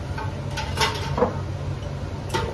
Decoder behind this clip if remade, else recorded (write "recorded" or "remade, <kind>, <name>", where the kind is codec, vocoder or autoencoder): recorded